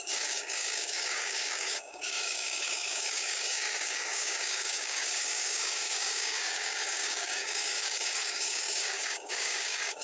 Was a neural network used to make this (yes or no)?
yes